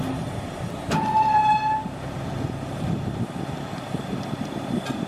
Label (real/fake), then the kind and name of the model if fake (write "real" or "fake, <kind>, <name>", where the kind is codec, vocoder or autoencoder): real